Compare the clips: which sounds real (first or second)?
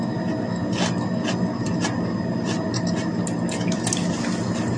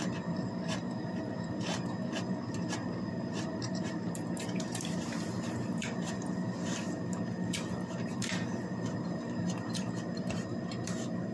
first